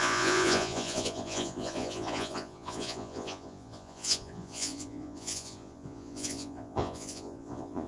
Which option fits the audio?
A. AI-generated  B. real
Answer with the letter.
A